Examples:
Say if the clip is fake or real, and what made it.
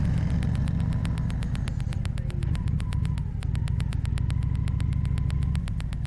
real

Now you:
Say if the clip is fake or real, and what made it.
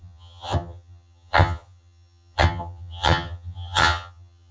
fake, vocoder, HiFi-GAN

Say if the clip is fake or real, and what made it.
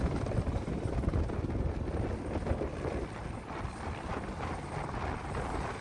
real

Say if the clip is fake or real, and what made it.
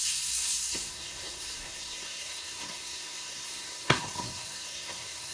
fake, codec, SNAC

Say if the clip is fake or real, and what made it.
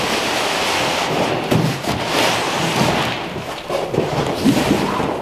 real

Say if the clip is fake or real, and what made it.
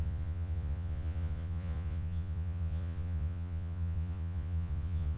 fake, vocoder, Vocos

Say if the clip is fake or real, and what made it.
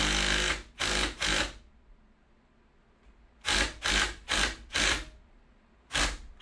real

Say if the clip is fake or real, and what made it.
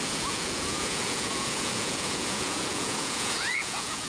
fake, vocoder, Vocos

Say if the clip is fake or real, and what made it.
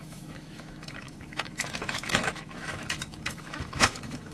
fake, autoencoder, DAC-VAE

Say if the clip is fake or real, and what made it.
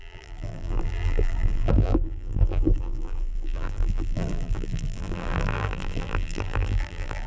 fake, vocoder, BigVGAN v2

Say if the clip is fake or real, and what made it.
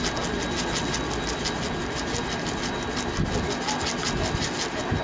real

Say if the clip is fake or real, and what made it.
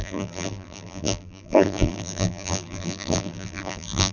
fake, vocoder, BigVGAN v2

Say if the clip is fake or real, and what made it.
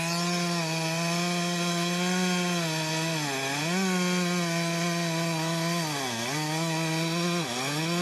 real